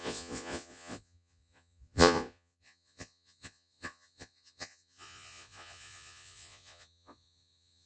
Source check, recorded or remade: remade